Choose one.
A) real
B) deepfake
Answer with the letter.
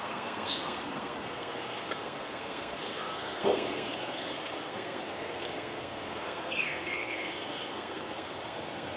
B